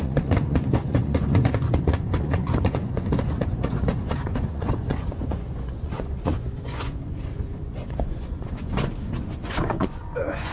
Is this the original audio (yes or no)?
no